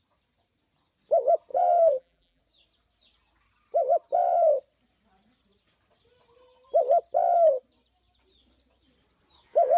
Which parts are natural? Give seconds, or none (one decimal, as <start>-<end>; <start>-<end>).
0.0-1.5; 2.4-9.8

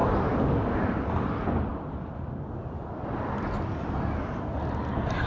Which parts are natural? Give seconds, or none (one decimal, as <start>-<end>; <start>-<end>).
0.0-1.7; 2.8-5.3

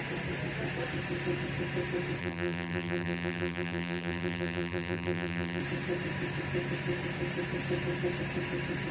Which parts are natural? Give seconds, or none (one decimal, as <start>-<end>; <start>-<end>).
0.0-2.2; 5.6-8.9

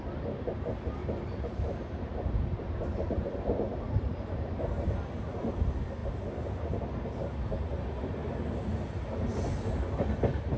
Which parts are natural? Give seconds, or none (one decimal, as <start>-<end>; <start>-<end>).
0.0-1.0; 5.6-10.6

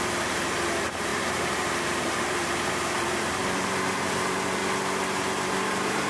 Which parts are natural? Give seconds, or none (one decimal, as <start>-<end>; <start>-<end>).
4.6-5.3

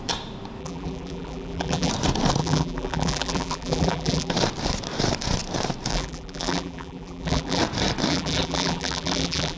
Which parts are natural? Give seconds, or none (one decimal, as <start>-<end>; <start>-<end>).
0.0-0.6; 1.9-2.4; 4.3-5.9; 7.6-8.1

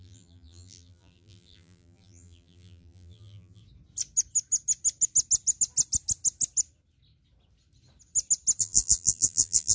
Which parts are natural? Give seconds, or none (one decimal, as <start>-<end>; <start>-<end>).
3.6-8.6

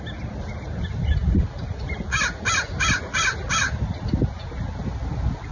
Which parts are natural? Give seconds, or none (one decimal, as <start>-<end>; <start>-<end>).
0.0-5.5